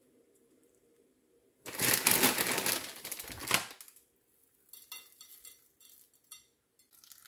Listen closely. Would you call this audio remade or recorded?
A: recorded